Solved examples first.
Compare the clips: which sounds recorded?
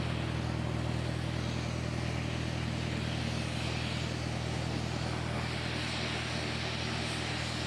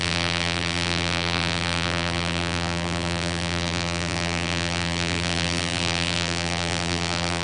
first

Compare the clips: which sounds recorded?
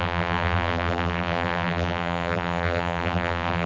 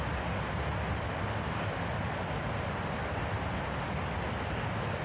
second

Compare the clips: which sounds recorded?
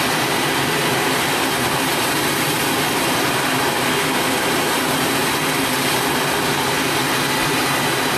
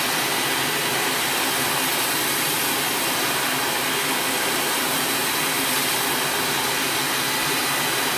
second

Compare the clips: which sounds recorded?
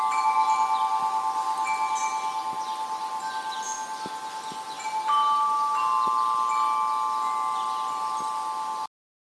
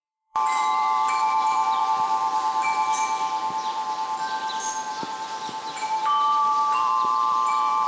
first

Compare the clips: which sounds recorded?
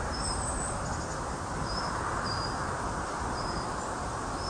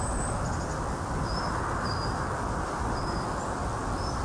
second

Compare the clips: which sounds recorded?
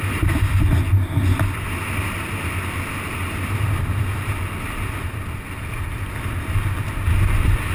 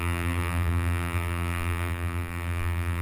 first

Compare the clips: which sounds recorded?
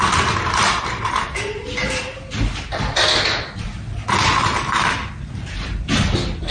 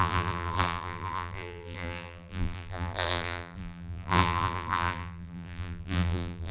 first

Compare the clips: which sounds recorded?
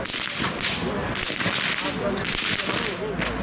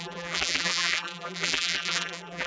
first